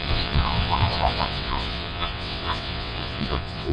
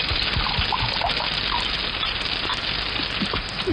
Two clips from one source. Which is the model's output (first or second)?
first